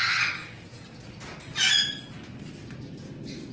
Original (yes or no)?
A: yes